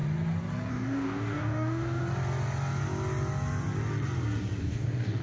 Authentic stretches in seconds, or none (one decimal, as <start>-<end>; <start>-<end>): 0.0-0.7; 2.0-4.6

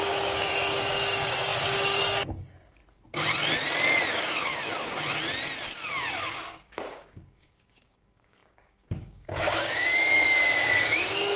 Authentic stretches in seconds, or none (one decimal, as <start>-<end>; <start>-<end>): 2.8-4.1; 4.5-6.1

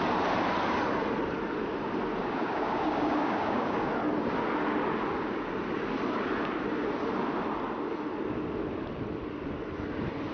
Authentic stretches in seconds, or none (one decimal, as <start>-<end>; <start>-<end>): 0.0-2.2; 3.9-10.3

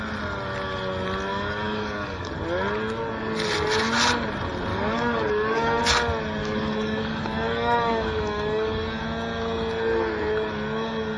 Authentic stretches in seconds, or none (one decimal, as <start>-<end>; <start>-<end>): 0.0-1.3; 2.3-4.7; 5.8-6.4; 9.0-11.2